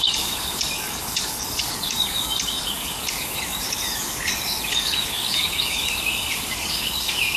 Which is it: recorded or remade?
remade